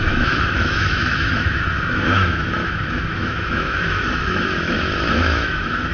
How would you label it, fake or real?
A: fake